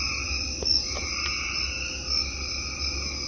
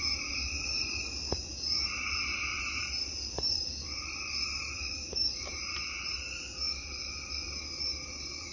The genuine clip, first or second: first